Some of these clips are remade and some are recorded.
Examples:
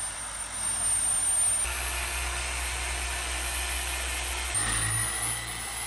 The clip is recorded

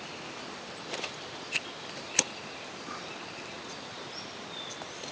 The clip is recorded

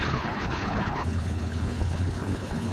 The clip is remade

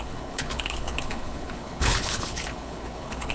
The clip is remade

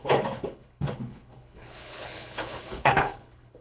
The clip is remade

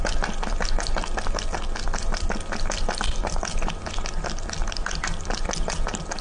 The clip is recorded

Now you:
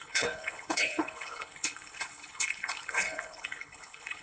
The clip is remade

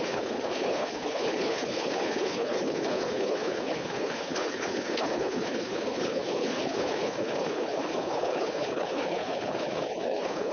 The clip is remade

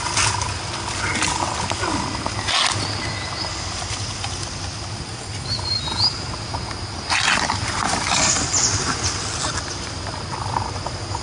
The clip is recorded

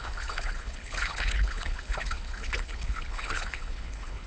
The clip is remade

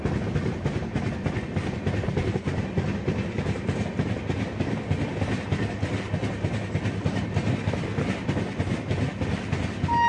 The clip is recorded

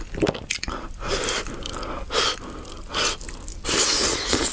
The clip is recorded